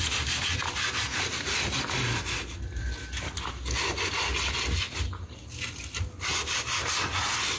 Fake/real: real